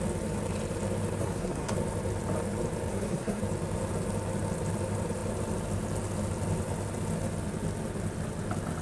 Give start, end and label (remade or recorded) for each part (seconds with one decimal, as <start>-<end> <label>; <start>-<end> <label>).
0.0-1.2 recorded; 1.2-1.7 remade; 1.7-2.9 recorded; 2.9-3.4 remade; 3.4-8.8 recorded